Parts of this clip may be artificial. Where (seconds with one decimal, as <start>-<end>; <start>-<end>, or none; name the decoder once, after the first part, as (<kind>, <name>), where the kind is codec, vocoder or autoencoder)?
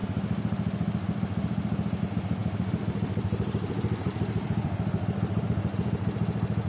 2.4-5.4 (vocoder, BigVGAN v2)